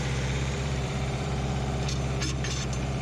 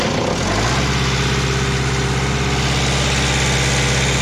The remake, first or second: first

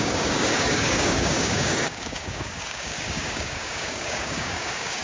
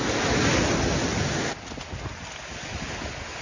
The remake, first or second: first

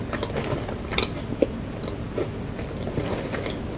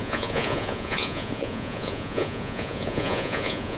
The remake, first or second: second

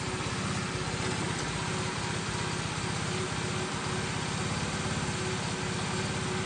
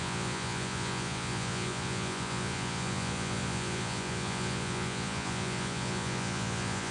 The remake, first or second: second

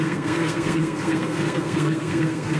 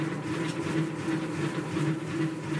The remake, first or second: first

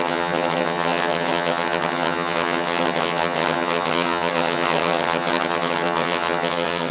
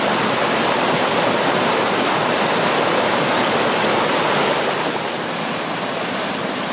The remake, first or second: first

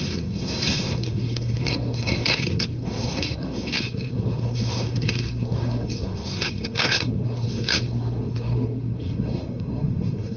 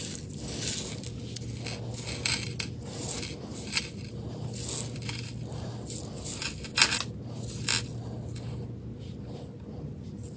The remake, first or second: first